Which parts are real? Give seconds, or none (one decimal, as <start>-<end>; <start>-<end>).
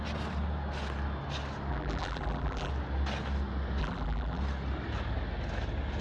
0.0-1.7; 2.7-3.8; 4.4-6.0